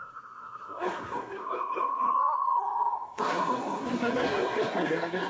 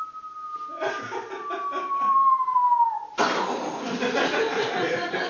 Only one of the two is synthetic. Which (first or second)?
first